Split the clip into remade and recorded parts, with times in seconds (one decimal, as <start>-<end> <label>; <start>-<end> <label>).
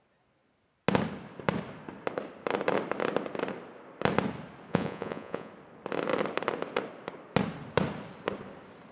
0.0-4.7 recorded; 4.7-5.5 remade; 5.5-8.9 recorded